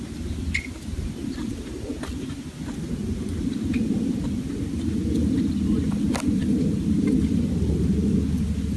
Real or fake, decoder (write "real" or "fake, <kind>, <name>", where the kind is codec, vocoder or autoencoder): real